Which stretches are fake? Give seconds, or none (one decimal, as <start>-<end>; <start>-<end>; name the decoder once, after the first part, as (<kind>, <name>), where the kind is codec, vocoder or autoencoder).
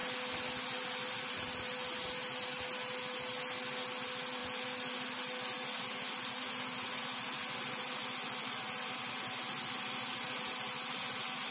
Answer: none